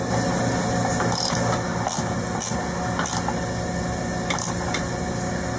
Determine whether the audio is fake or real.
real